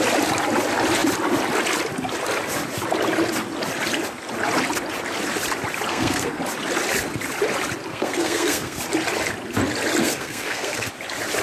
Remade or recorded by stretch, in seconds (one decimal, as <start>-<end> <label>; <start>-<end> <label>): 0.0-5.9 recorded; 5.9-6.4 remade; 6.4-7.9 recorded; 7.9-8.8 remade; 8.8-10.0 recorded; 10.0-10.9 remade; 10.9-11.4 recorded